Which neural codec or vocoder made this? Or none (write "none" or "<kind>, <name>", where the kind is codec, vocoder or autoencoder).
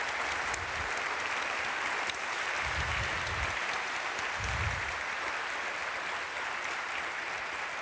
none